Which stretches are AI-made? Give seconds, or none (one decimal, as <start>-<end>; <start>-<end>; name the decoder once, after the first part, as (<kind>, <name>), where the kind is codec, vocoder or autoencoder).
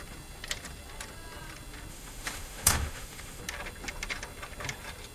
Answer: 1.9-3.4 (autoencoder, DAC-VAE)